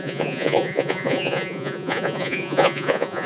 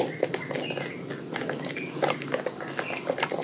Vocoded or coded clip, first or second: first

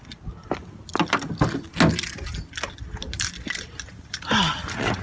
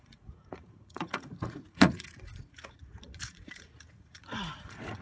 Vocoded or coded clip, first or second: second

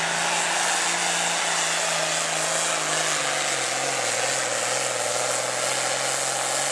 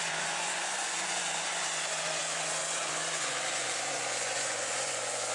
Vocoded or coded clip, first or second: second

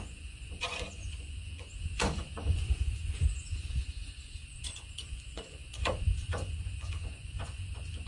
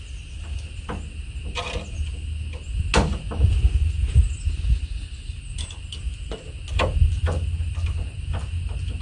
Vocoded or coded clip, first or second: first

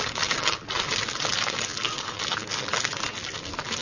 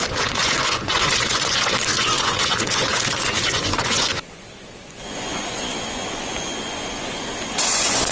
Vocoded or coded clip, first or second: second